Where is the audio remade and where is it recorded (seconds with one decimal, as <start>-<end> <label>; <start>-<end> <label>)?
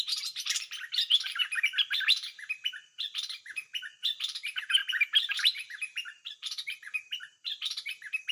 0.0-8.3 remade